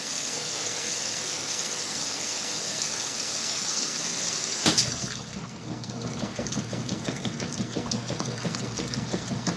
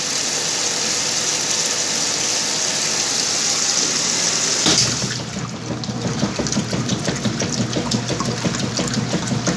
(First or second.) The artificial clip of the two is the first